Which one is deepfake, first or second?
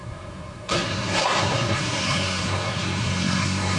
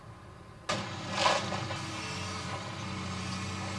first